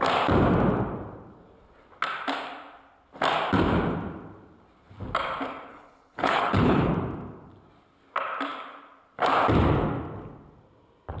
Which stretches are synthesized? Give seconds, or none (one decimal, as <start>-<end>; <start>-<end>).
5.7-6.9